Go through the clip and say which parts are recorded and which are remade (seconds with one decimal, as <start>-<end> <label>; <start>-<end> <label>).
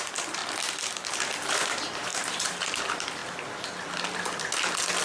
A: 0.0-0.4 remade; 0.4-1.1 recorded; 1.1-3.2 remade; 3.2-5.0 recorded